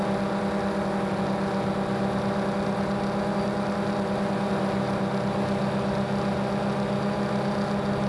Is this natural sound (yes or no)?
yes